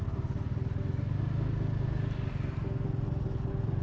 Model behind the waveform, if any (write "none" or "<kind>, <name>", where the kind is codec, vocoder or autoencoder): none